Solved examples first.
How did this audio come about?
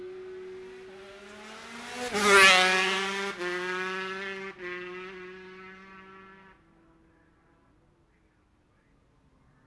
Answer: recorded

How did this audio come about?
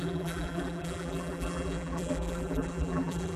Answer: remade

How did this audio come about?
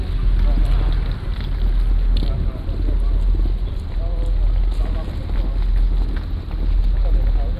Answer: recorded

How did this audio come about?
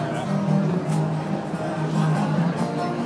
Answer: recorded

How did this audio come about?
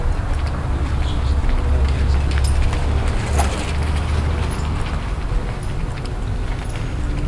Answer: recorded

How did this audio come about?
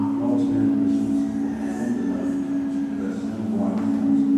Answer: recorded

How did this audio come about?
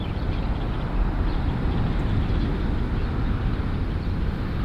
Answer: recorded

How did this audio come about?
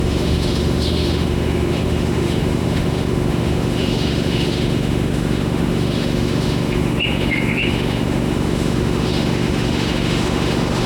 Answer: remade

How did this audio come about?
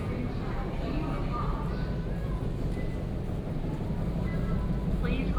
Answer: recorded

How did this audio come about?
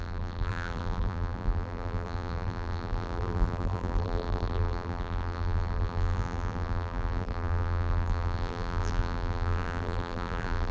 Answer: remade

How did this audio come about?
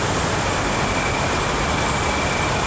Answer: recorded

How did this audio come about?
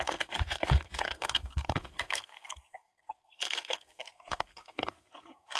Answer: remade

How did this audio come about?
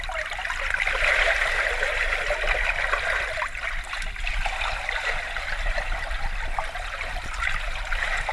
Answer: recorded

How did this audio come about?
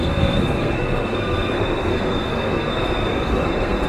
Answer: remade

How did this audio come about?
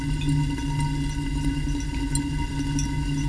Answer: recorded